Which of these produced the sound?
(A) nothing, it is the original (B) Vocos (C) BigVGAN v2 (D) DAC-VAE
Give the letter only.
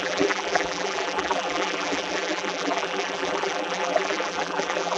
C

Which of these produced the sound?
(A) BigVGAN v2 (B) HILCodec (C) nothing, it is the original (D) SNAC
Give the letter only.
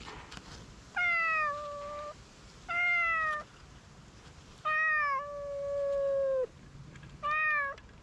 C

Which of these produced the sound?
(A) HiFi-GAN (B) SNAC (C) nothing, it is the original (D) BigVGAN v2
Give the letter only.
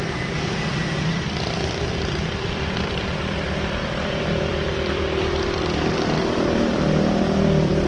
D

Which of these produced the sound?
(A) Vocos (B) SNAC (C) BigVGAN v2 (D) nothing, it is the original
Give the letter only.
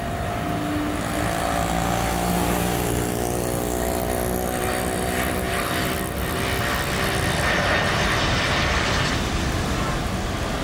D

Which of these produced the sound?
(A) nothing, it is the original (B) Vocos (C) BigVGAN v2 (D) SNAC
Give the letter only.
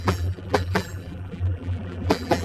C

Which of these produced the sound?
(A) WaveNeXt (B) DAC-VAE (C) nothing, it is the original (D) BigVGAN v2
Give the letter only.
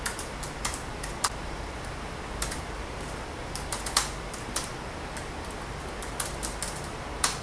D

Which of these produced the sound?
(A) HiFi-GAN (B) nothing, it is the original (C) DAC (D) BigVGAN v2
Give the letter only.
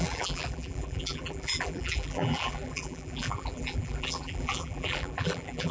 D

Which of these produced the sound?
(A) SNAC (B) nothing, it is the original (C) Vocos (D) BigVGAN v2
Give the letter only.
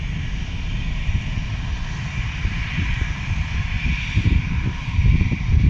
B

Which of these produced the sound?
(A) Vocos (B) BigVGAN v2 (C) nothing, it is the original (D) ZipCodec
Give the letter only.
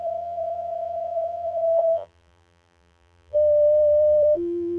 B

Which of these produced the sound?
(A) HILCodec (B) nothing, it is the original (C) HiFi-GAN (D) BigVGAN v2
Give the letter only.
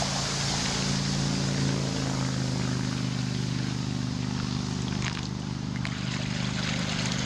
B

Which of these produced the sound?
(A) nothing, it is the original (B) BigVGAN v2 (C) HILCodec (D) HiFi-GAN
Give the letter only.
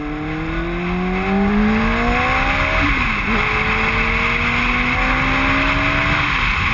A